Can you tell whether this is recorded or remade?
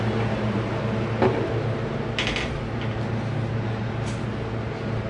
recorded